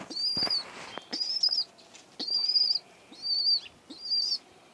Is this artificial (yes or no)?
no